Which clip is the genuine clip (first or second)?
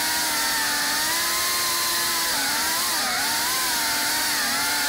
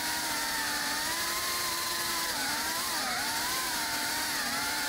first